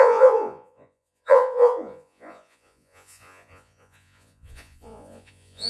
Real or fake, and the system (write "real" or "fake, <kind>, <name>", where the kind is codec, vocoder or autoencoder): fake, vocoder, Vocos